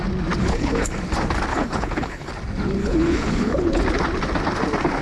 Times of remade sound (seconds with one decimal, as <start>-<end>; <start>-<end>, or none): 0.4-1.0; 1.5-2.3; 2.8-3.8

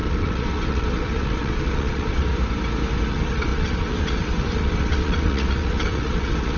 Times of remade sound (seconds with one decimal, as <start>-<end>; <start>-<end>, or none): 0.0-2.3; 3.1-6.6

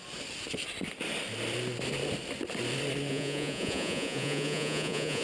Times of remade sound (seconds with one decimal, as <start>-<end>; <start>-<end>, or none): 3.1-5.2